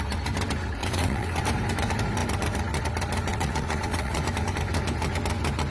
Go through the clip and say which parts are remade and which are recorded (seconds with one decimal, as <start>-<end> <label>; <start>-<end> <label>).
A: 0.0-0.8 recorded; 0.8-1.4 remade; 1.4-3.3 recorded; 3.3-4.2 remade; 4.2-5.7 recorded

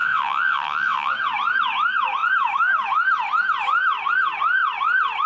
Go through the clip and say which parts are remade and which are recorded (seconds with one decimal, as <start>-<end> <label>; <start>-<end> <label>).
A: 0.0-1.1 remade; 1.1-5.3 recorded

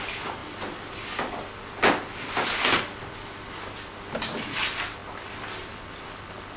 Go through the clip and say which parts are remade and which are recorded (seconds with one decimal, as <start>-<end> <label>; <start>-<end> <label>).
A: 0.0-6.6 recorded

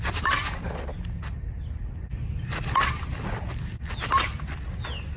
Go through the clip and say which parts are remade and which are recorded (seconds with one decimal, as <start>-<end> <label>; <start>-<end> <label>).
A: 0.0-5.2 recorded

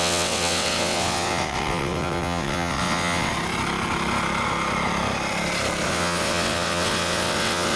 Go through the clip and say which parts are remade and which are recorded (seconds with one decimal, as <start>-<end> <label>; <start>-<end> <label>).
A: 0.0-3.3 remade; 3.3-5.9 recorded; 5.9-7.8 remade